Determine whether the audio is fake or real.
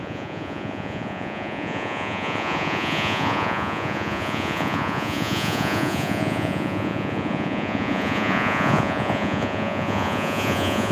fake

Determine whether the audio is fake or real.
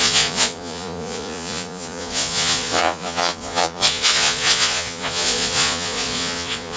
fake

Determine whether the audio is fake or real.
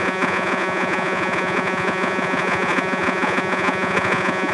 fake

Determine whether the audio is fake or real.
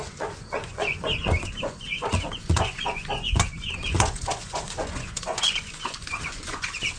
fake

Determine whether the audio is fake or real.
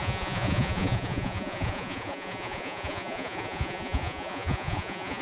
fake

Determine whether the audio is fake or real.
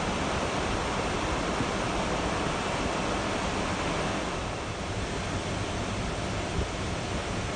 real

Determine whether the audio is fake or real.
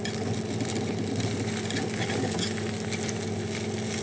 real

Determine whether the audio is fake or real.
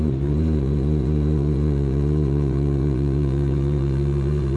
fake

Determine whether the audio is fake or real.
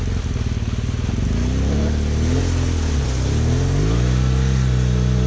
real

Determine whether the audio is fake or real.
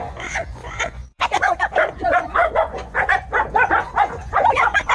fake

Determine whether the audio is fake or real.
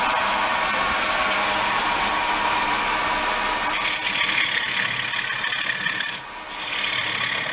real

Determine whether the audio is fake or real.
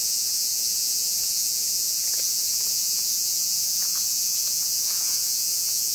fake